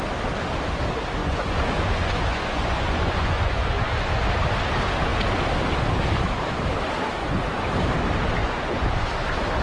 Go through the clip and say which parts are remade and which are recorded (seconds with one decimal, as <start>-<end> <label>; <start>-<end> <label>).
0.0-1.2 recorded; 1.2-4.1 remade; 4.1-7.2 recorded; 7.2-7.7 remade; 7.7-8.4 recorded; 8.4-9.1 remade; 9.1-9.6 recorded